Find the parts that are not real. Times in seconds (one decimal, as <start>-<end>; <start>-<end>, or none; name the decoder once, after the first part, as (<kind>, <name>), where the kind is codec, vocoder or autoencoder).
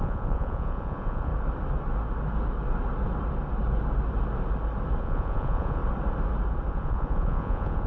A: 0.0-1.3 (vocoder, Vocos); 5.0-5.8; 6.7-7.9